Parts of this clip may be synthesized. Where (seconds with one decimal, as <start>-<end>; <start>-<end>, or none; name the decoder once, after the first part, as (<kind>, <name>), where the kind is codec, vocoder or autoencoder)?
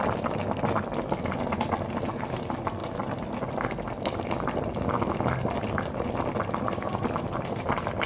none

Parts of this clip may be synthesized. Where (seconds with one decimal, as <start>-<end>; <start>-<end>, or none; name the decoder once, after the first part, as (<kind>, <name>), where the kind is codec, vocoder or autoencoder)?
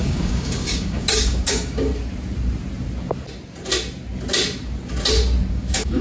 0.0-1.9 (codec, DAC); 5.5-6.0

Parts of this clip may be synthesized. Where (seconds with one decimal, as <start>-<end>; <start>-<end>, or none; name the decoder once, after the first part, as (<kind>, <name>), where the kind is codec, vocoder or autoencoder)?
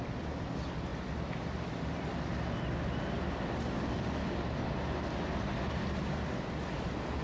none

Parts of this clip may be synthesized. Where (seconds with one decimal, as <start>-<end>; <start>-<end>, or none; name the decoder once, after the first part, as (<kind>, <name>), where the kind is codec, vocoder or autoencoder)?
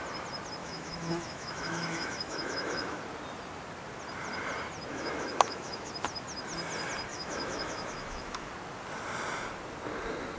0.6-3.0 (autoencoder, DAC-VAE); 4.9-5.9; 7.1-8.5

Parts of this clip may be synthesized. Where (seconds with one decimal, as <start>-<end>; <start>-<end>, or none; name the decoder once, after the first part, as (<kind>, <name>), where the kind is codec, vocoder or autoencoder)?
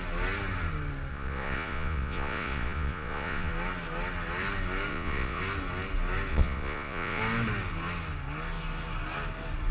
1.1-3.5 (vocoder, Vocos); 4.9-5.4; 6.3-7.2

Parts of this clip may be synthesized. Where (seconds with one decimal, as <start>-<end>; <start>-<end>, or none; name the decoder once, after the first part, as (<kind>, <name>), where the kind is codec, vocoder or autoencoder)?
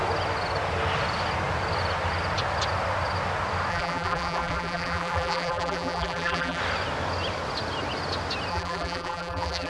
3.7-6.6 (vocoder, BigVGAN v2); 8.5-9.7